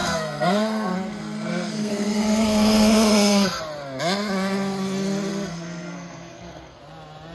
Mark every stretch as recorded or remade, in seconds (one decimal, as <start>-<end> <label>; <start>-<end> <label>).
0.0-3.6 remade; 3.6-5.3 recorded; 5.3-6.8 remade; 6.8-7.3 recorded